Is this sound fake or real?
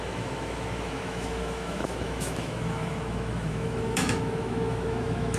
fake